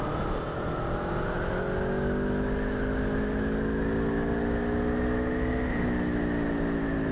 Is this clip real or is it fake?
real